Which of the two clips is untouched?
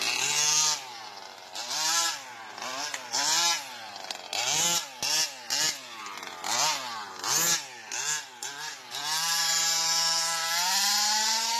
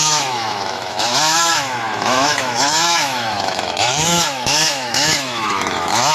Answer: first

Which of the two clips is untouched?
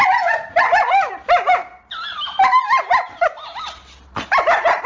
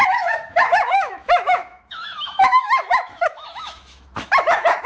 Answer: first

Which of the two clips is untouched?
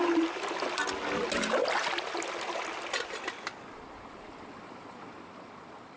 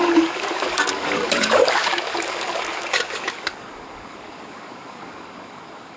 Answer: first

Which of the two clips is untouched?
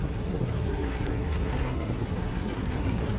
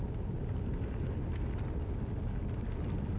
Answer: second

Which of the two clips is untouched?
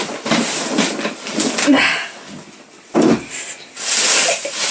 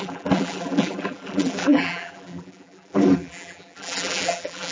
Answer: first